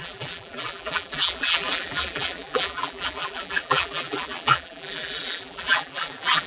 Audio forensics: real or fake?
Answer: fake